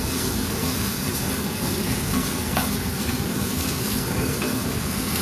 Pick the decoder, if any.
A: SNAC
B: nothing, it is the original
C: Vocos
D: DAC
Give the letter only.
A